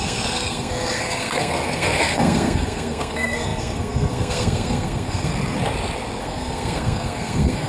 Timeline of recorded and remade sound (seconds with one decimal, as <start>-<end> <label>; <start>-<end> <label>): 0.0-5.3 remade; 5.3-6.2 recorded; 6.2-7.7 remade